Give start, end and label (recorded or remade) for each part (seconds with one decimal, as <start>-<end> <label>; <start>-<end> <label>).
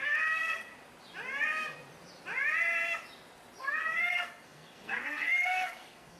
0.0-0.7 remade; 0.7-3.6 recorded; 3.6-6.2 remade